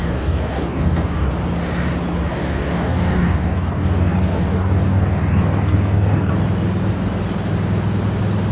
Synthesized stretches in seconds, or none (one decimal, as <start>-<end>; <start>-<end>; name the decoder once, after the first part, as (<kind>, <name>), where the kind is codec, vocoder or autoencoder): 0.0-1.3 (codec, DAC); 2.3-6.3

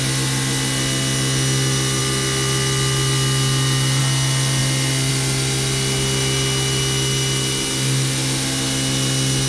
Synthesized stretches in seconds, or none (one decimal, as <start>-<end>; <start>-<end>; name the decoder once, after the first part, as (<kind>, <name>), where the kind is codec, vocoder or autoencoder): none

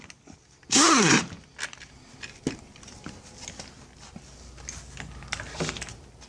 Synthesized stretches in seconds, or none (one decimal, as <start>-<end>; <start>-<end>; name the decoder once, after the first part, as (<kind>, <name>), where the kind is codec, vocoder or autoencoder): 0.7-1.2 (codec, SNAC)

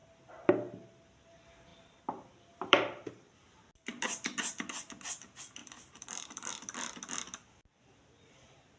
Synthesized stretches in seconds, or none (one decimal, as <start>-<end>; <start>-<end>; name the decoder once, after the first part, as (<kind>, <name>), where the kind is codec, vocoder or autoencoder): 0.0-1.0 (vocoder, BigVGAN v2); 1.7-3.1; 3.9-4.5; 5.6-6.5

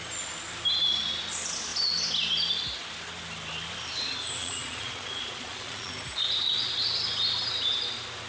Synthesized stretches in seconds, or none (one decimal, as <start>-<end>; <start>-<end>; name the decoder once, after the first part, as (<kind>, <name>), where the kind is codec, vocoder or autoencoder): 4.4-5.9 (vocoder, Vocos)

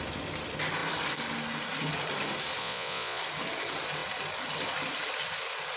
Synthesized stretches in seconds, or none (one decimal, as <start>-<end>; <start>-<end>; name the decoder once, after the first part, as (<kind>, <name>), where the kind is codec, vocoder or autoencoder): 2.6-3.2 (vocoder, Vocos)

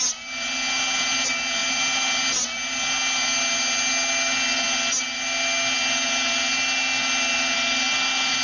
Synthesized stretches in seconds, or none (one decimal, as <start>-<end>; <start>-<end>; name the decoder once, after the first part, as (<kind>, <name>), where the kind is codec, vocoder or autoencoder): none

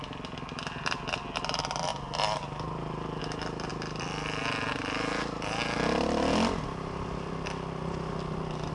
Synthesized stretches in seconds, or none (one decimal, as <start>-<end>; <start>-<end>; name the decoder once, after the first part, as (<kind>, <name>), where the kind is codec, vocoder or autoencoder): none